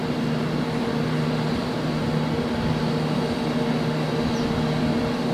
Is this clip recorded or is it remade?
recorded